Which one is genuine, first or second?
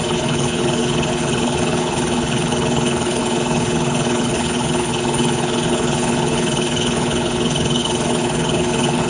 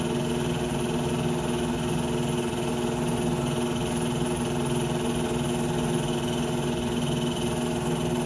second